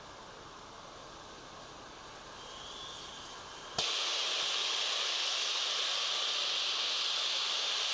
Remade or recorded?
recorded